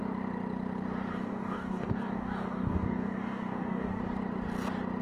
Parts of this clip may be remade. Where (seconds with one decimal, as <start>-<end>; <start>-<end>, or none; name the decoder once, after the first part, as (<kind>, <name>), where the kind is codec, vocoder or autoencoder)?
1.1-4.0 (codec, DAC)